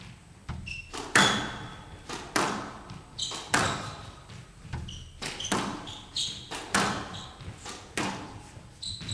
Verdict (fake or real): real